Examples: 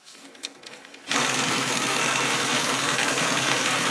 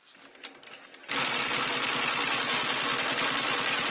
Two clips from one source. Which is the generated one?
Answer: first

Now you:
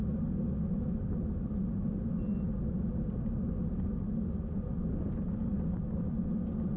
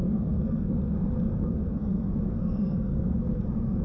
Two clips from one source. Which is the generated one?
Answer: second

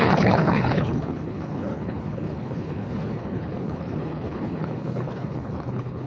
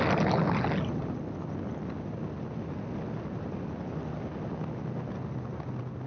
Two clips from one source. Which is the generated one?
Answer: first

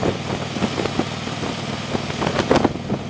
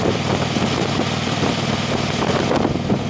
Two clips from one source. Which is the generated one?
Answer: second